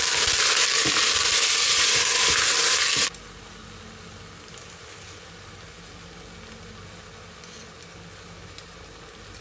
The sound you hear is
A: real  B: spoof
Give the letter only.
A